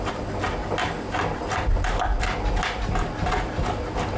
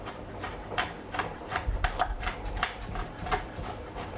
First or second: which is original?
first